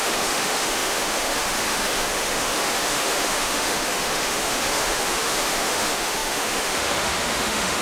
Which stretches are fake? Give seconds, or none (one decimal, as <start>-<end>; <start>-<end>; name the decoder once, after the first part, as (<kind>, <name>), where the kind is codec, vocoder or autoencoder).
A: 0.0-7.8 (autoencoder, DAC-VAE)